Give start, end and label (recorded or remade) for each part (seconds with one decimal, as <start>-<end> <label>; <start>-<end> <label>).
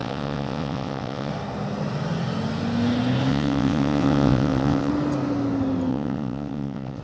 0.0-1.3 remade; 1.3-3.3 recorded; 3.3-4.9 remade; 4.9-5.9 recorded; 5.9-7.0 remade